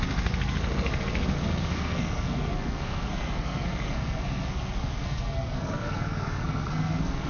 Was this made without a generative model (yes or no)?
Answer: no